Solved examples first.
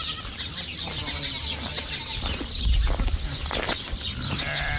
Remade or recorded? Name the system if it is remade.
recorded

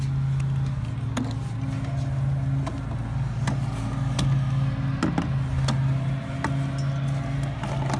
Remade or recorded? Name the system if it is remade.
recorded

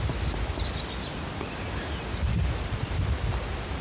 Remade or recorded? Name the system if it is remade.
recorded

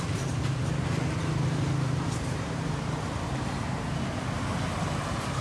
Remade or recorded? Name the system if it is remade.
remade, vocoder, BigVGAN v2